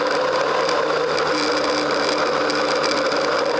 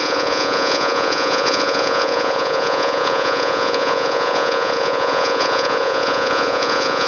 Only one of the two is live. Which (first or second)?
first